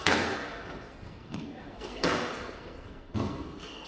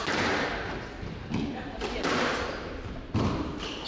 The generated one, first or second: first